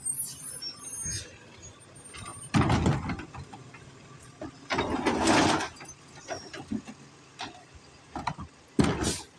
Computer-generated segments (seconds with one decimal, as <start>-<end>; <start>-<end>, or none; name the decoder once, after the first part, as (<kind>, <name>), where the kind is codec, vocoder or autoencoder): none